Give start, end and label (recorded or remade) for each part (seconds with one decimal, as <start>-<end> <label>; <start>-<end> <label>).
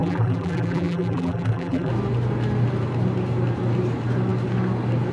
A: 0.0-1.9 remade; 1.9-5.1 recorded